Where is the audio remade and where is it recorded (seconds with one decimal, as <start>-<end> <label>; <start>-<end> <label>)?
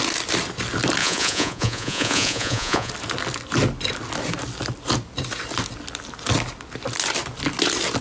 0.0-1.0 recorded; 1.0-2.9 remade; 2.9-8.0 recorded